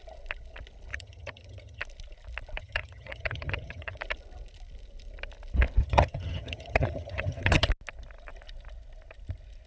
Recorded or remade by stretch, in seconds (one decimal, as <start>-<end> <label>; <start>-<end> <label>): 0.0-0.9 recorded; 0.9-1.8 remade; 1.8-2.6 recorded; 2.6-4.0 remade; 4.0-5.8 recorded; 5.8-7.7 remade; 7.7-9.7 recorded